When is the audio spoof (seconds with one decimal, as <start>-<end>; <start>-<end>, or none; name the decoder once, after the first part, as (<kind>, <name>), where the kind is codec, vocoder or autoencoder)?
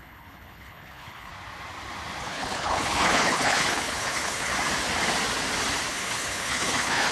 0.0-1.3 (codec, HILCodec); 2.2-4.5; 5.9-7.1